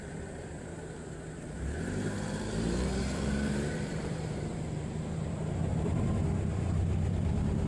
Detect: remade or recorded remade